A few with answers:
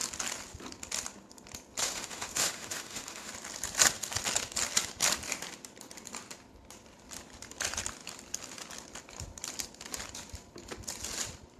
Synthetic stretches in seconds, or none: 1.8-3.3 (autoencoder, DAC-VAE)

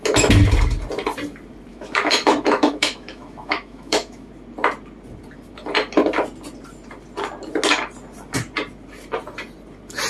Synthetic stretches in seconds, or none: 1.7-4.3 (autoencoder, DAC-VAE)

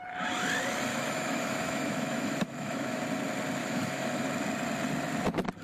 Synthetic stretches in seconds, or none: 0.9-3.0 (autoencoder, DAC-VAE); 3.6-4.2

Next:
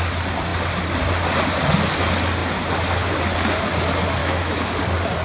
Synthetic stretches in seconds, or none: 4.2-4.8 (autoencoder, DAC-VAE)

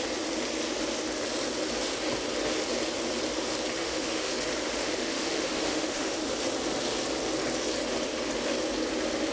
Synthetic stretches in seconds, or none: 3.8-4.3 (autoencoder, DAC-VAE); 4.8-6.3